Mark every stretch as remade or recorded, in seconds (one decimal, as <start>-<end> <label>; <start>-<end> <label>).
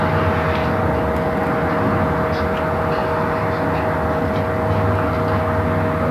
0.0-6.1 recorded